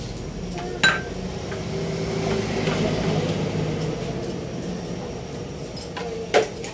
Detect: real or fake real